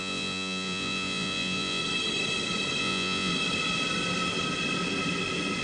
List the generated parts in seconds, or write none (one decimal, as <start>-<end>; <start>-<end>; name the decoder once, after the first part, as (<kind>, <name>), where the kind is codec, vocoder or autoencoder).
0.0-1.8 (vocoder, Vocos); 2.8-3.3